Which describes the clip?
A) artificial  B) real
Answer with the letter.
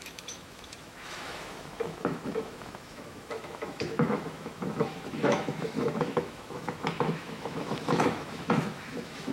A